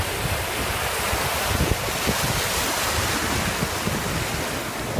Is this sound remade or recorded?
recorded